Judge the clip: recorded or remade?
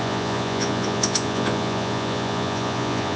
remade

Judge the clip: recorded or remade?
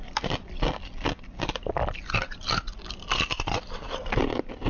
recorded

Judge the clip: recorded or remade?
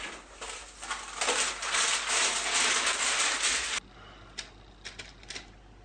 recorded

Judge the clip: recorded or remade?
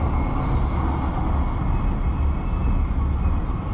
recorded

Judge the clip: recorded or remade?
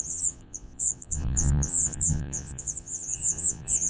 remade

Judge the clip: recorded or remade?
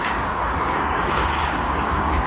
remade